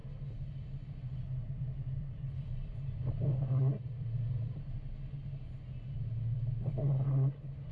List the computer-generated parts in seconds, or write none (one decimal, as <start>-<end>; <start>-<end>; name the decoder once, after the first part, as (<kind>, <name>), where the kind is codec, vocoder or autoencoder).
0.0-4.6 (vocoder, BigVGAN v2)